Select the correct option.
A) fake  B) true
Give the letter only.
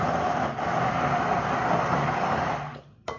B